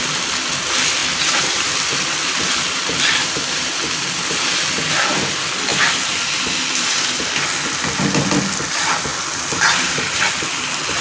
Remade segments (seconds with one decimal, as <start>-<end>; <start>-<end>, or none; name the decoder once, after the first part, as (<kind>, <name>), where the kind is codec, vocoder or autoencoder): 1.0-4.9 (vocoder, BigVGAN v2); 5.7-7.3; 9.1-10.4

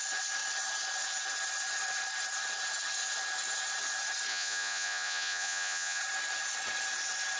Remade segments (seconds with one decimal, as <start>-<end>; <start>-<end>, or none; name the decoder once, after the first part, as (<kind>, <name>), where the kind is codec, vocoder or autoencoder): 4.3-6.0 (vocoder, Vocos)

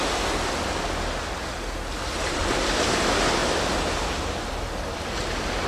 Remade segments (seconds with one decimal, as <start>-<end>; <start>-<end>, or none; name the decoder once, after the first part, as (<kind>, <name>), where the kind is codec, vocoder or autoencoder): none

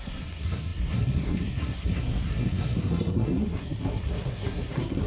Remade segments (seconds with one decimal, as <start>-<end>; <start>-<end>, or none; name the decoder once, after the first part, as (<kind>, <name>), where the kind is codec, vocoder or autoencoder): 0.0-5.1 (codec, SNAC)

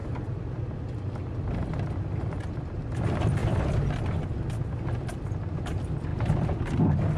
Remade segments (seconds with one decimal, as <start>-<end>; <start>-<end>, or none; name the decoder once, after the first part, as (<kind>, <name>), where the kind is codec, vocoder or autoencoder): 6.1-6.6 (vocoder, BigVGAN v2)

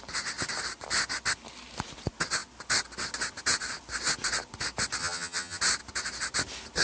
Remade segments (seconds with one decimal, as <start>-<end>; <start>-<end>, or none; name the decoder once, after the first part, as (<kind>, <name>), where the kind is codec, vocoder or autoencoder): 5.0-5.6 (vocoder, HiFi-GAN)

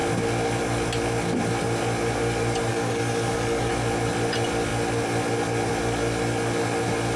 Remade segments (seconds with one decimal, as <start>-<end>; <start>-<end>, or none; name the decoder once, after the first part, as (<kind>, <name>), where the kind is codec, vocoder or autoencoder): 2.7-3.7 (codec, DAC)

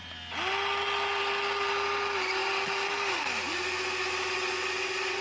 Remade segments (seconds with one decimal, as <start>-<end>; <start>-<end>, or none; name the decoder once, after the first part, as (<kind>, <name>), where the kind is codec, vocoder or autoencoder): 1.2-5.2 (vocoder, BigVGAN v2)